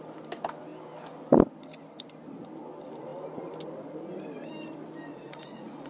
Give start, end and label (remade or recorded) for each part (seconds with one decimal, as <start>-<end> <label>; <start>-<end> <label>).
0.0-5.1 recorded; 5.1-5.9 remade